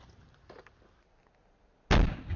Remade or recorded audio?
recorded